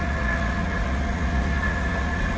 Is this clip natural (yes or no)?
no